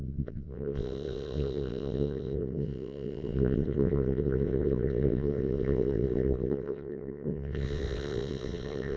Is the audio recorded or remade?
remade